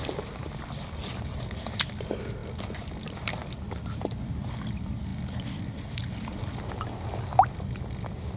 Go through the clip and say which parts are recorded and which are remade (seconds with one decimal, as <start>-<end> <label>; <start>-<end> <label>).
0.0-8.4 recorded